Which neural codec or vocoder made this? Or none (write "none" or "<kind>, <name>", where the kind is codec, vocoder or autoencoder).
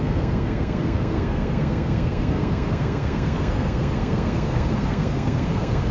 codec, SNAC